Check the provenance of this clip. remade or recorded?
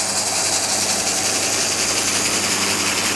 recorded